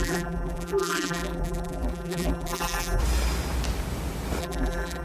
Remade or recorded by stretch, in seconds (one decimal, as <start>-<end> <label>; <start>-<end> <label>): 0.0-3.0 remade; 3.0-4.4 recorded; 4.4-5.0 remade